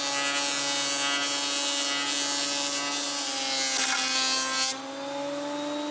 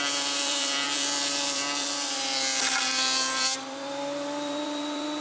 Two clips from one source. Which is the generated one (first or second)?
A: second